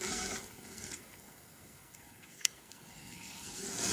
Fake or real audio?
fake